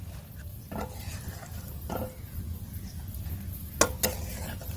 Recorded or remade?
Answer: recorded